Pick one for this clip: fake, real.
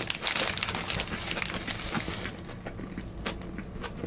real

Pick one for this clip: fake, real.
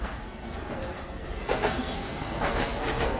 fake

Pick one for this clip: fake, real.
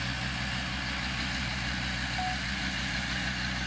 real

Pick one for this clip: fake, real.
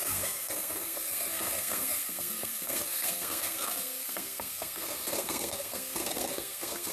fake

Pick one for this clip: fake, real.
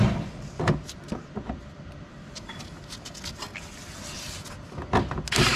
real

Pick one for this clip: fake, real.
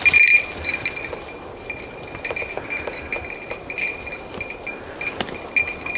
real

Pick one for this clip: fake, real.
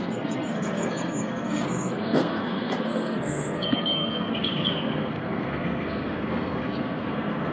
fake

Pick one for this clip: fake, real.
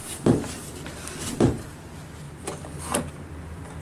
real